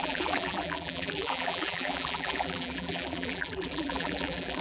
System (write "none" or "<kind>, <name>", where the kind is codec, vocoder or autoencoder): vocoder, BigVGAN v2